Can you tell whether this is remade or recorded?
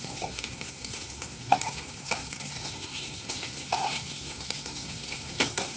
remade